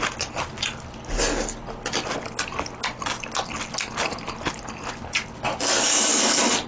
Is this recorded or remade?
recorded